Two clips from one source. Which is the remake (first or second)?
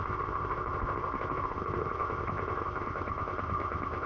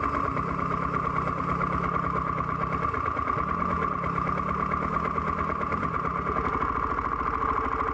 first